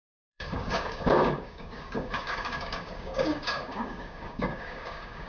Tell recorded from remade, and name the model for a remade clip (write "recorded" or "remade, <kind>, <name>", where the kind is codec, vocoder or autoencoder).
remade, codec, DAC